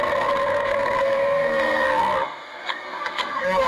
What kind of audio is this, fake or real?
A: fake